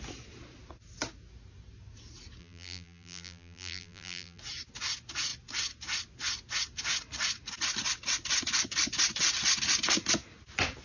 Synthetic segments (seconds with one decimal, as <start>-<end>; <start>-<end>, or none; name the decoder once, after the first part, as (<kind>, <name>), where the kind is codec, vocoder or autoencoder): 2.4-4.4 (vocoder, BigVGAN v2)